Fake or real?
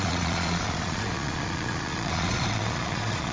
fake